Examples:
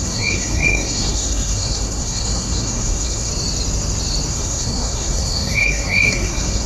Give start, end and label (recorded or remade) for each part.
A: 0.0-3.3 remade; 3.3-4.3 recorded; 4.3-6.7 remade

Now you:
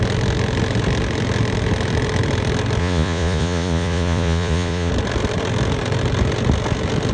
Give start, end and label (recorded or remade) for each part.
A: 0.0-2.8 recorded; 2.8-4.9 remade; 4.9-7.1 recorded

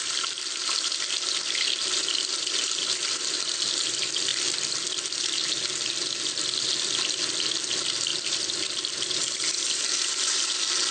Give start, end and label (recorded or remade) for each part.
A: 0.0-8.1 recorded; 8.1-9.4 remade; 9.4-10.9 recorded

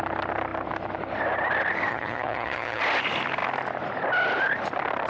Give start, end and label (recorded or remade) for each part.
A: 0.0-1.9 recorded; 1.9-2.8 remade; 2.8-5.1 recorded

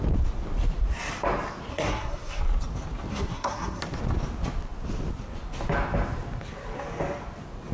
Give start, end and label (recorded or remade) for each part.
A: 0.0-1.7 recorded; 1.7-2.4 remade; 2.4-3.1 recorded; 3.1-3.8 remade; 3.8-7.7 recorded

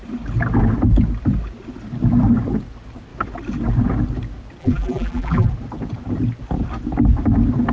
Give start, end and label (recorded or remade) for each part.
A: 0.0-4.6 recorded; 4.6-5.5 remade; 5.5-7.7 recorded

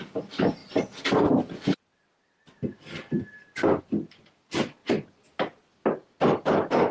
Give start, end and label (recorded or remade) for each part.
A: 0.0-6.9 recorded